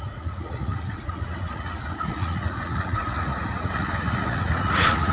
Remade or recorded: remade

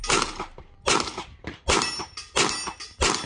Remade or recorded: recorded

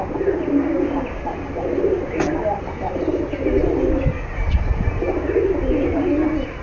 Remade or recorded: recorded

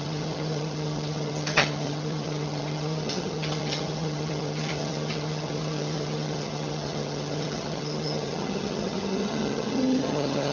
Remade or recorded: remade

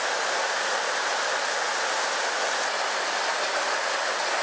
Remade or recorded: recorded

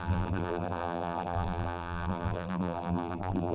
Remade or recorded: remade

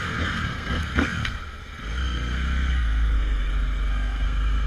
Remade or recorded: remade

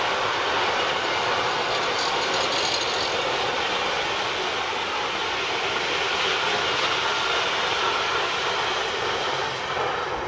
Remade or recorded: recorded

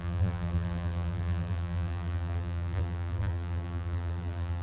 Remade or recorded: remade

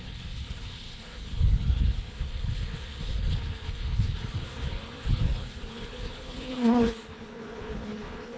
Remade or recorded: remade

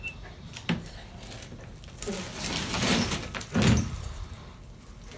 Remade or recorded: recorded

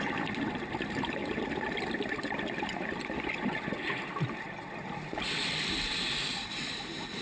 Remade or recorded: recorded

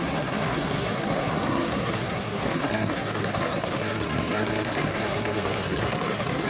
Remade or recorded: remade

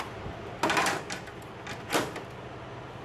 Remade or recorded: recorded